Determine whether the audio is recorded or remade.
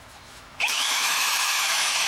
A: remade